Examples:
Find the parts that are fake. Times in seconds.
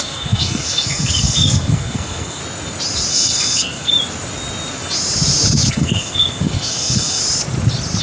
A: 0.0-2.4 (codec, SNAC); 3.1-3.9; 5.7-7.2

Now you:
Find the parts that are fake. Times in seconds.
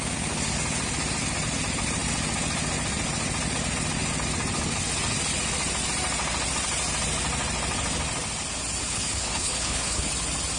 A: 8.8-10.1 (codec, HILCodec)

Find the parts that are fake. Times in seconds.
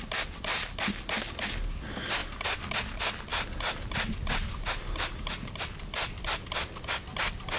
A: none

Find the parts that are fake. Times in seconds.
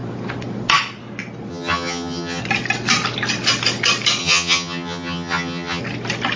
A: 1.5-2.4 (vocoder, HiFi-GAN); 4.2-5.8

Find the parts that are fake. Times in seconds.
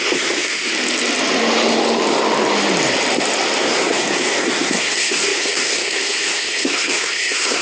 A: 0.0-0.7 (codec, SNAC); 3.6-7.6